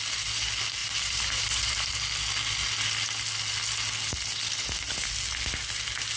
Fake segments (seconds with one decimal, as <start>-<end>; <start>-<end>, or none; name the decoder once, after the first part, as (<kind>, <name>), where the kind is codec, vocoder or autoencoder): 0.8-1.9 (vocoder, BigVGAN v2)